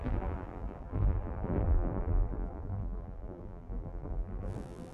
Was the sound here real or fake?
fake